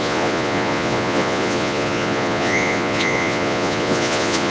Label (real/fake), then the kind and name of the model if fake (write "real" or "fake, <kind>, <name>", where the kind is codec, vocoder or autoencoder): fake, vocoder, Vocos